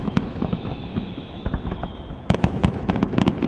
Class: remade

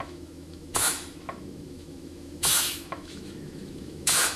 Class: remade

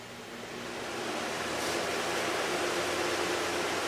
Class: recorded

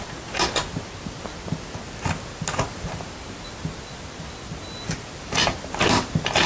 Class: recorded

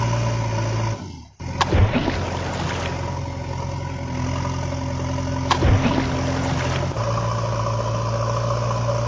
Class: recorded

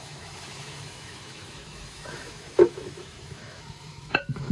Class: remade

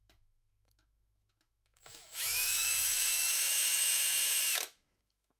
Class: remade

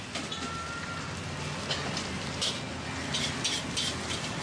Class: recorded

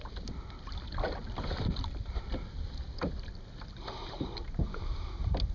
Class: recorded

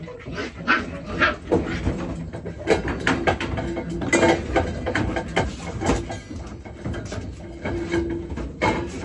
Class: recorded